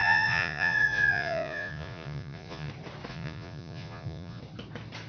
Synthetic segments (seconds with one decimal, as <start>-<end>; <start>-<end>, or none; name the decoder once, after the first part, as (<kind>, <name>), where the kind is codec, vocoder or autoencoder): 0.0-2.7 (vocoder, Vocos); 3.1-4.4